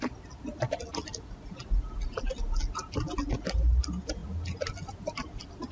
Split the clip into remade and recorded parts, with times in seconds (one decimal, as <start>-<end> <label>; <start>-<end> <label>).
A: 0.0-5.7 recorded